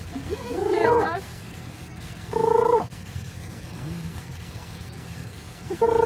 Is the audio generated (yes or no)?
yes